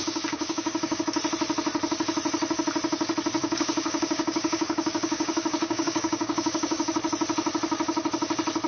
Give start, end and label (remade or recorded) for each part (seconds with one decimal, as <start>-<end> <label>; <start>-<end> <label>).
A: 0.0-1.0 remade; 1.0-3.4 recorded; 3.4-6.9 remade; 6.9-8.7 recorded